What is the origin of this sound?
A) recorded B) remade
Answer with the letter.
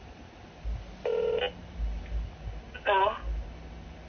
A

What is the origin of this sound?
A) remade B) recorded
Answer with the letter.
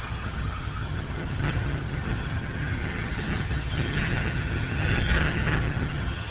A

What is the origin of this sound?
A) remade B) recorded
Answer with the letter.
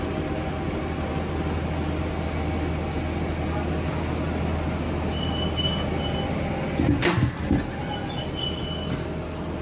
B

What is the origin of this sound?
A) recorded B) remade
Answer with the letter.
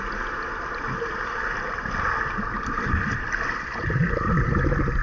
A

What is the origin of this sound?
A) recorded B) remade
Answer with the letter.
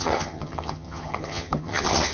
B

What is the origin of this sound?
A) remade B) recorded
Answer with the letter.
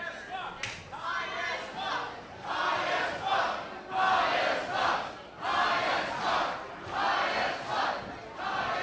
B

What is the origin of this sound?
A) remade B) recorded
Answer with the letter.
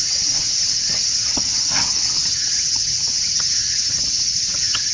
A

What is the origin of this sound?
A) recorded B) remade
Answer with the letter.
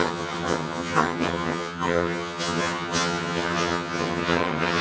B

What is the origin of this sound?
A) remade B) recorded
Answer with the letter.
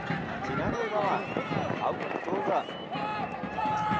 B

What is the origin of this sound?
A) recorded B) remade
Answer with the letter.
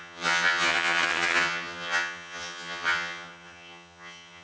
B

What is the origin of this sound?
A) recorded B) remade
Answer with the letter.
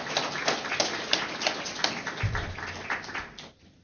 A